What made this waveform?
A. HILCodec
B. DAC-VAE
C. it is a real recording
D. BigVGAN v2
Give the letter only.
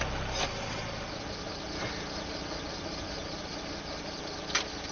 C